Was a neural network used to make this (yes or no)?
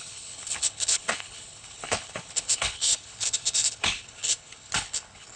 yes